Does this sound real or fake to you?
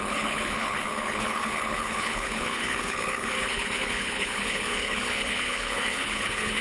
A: fake